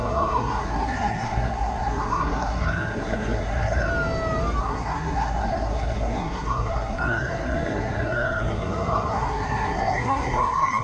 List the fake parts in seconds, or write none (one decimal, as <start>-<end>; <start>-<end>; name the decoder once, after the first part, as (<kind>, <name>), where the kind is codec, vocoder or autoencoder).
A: 0.0-3.9 (codec, SNAC); 4.6-10.8